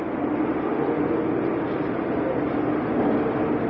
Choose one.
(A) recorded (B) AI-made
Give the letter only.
A